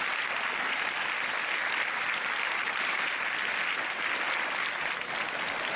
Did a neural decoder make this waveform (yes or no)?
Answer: no